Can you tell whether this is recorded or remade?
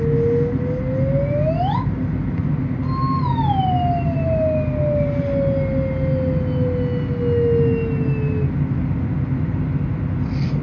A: recorded